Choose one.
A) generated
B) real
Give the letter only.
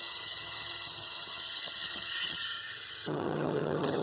A